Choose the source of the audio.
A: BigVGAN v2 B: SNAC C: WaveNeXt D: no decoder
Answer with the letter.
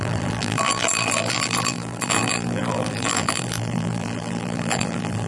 A